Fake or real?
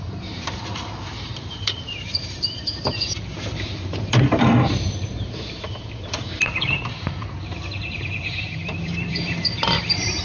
fake